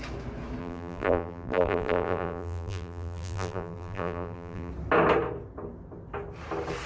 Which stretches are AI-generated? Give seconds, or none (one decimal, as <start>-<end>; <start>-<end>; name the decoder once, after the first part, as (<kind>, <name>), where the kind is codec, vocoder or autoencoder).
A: 0.6-4.7 (vocoder, BigVGAN v2)

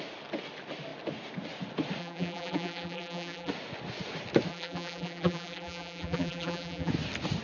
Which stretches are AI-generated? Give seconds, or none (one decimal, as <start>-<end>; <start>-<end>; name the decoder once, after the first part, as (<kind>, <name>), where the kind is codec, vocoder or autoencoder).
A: 2.0-3.5 (vocoder, BigVGAN v2); 4.5-6.9

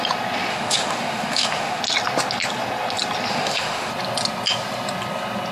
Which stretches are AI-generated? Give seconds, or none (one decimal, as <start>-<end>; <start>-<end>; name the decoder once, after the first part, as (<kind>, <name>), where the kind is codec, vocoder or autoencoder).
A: 0.5-1.8 (autoencoder, DAC-VAE); 3.3-3.9

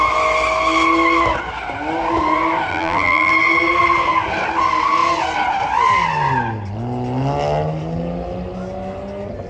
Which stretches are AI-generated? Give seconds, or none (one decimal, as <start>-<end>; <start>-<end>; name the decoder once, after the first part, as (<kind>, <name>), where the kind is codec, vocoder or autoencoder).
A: 2.7-3.3 (vocoder, BigVGAN v2)

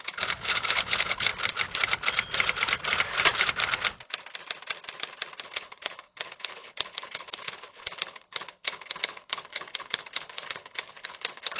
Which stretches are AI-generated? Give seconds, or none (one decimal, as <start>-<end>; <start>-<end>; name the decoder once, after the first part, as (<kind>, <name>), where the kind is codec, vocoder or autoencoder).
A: 0.0-1.3 (codec, HILCodec); 5.4-11.6

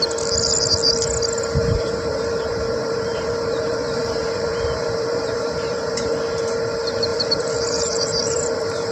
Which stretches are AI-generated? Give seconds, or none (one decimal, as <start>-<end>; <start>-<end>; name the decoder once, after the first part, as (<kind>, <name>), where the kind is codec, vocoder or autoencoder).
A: 1.6-6.1 (vocoder, BigVGAN v2); 7.1-8.9

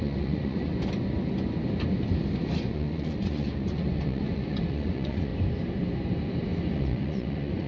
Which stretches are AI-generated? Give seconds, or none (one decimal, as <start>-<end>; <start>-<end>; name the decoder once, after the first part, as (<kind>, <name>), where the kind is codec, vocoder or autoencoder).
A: 0.0-0.7 (vocoder, Vocos); 2.6-5.3; 6.7-7.7